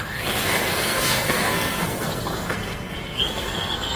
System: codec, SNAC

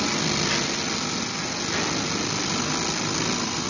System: none